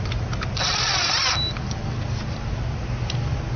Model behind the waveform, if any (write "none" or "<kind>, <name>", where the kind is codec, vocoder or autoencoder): none